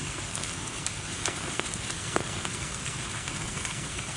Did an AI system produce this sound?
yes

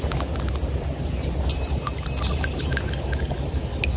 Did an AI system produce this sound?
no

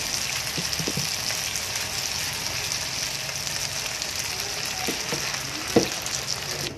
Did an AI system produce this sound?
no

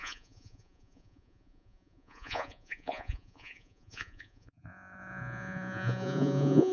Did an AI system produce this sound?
yes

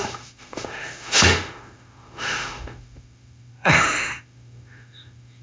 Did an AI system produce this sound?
yes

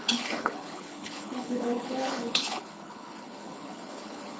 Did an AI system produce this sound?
yes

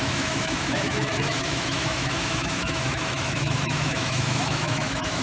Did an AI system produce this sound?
yes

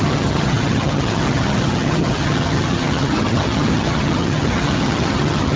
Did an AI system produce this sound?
yes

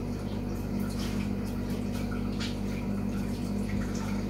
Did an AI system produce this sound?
no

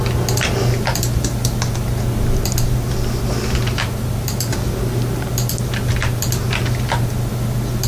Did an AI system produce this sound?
no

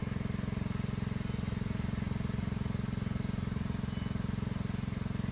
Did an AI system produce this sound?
no